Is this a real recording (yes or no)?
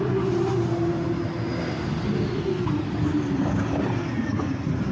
yes